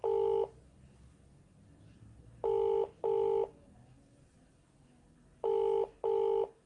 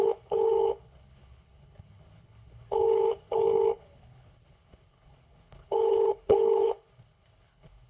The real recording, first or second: first